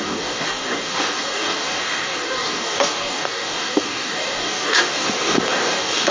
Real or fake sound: fake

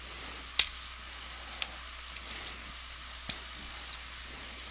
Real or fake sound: real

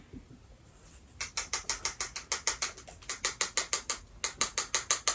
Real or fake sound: real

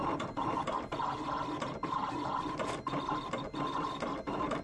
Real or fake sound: real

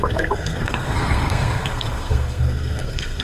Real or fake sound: fake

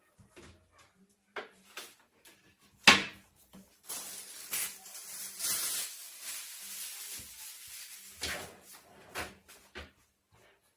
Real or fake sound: real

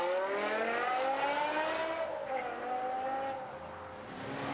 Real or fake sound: real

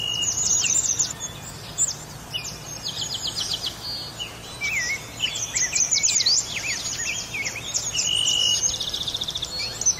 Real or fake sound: real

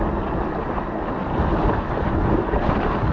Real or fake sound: real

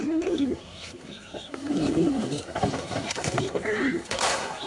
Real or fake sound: fake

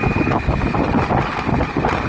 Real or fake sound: real